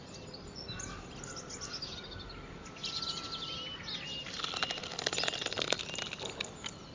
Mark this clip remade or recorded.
recorded